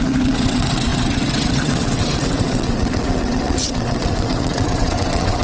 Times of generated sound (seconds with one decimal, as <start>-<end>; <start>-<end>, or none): 0.0-5.4